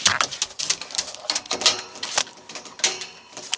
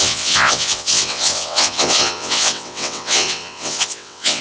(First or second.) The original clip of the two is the first